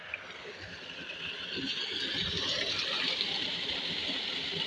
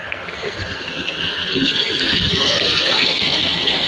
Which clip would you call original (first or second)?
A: first